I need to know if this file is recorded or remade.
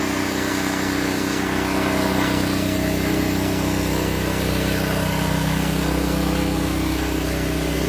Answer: remade